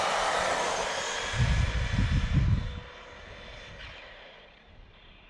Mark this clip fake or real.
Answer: real